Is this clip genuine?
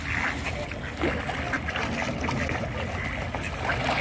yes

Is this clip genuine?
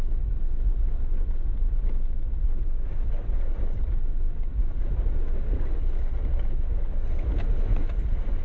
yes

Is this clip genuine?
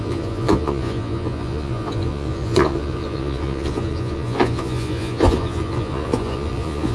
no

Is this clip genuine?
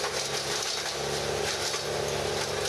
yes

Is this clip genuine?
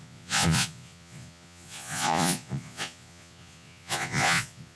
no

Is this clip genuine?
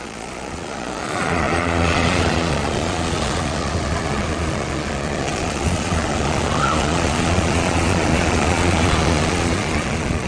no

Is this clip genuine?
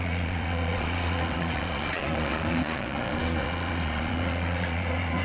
no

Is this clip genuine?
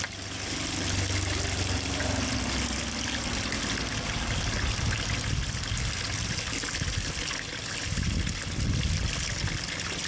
yes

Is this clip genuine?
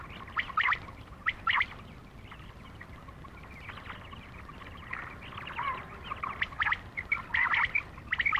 yes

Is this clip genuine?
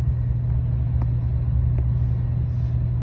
yes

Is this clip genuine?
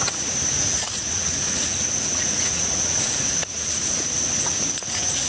no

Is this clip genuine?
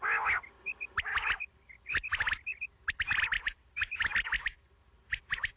yes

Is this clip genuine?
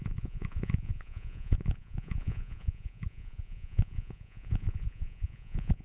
no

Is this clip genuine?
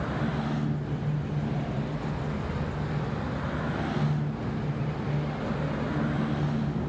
yes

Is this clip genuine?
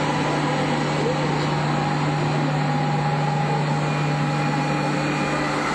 yes